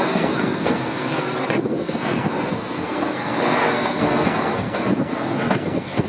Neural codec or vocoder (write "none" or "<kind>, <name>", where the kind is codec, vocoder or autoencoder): codec, SNAC